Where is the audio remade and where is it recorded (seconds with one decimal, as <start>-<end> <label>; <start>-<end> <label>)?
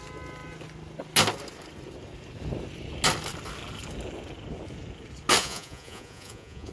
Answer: 0.0-5.4 recorded; 5.4-6.7 remade